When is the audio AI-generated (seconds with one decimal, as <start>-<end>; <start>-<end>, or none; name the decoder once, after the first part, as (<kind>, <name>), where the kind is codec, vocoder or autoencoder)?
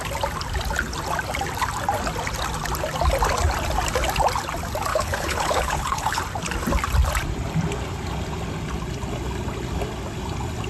4.9-6.2 (codec, HILCodec)